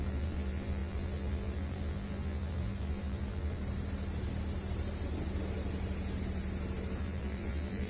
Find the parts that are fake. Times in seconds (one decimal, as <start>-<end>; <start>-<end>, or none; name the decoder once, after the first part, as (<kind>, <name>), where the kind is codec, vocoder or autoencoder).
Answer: 0.0-3.6 (vocoder, BigVGAN v2); 7.0-7.9